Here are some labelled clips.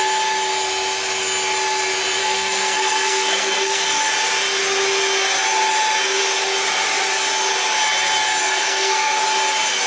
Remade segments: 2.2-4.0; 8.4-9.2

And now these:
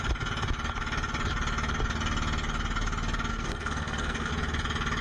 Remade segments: 3.3-4.3

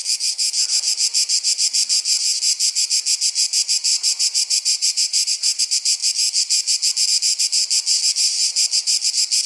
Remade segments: 3.9-5.6

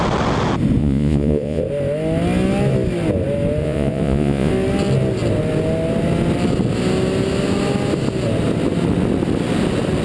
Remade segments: 0.8-1.6; 3.6-4.5